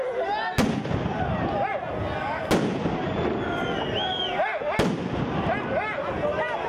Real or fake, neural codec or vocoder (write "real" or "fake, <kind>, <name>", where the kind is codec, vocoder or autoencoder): real